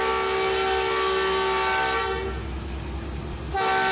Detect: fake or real real